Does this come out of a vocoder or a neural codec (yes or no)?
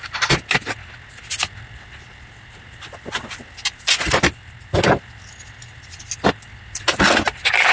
no